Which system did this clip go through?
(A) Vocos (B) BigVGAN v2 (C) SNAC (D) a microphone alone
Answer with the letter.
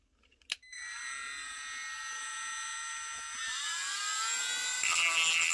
D